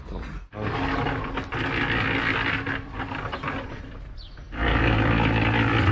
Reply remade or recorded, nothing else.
recorded